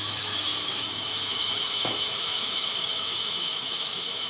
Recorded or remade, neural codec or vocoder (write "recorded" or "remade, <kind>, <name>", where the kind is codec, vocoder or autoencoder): remade, autoencoder, DAC-VAE